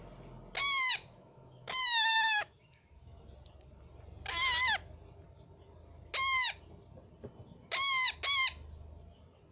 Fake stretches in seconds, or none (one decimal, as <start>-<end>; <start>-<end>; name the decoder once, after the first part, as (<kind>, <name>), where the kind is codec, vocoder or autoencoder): 1.0-3.2 (autoencoder, DAC-VAE)